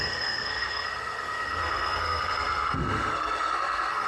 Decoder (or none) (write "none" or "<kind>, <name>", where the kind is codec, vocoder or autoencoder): codec, SNAC